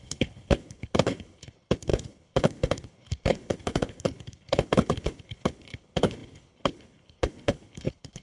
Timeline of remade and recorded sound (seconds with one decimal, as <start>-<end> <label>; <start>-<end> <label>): 0.0-8.2 remade